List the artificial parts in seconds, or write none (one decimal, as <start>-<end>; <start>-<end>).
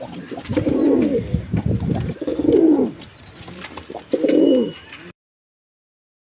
0.5-1.2; 2.3-6.2